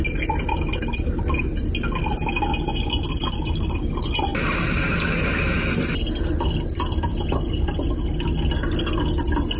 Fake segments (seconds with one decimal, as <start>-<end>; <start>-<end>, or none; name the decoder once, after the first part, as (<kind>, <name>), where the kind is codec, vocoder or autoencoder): none